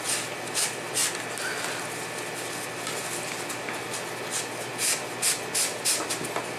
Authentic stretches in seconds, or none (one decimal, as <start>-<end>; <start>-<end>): 0.0-6.6